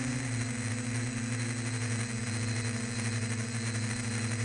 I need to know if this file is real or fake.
real